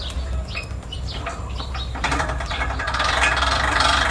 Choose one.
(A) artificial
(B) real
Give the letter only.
A